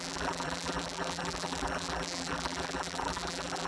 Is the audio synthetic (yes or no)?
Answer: yes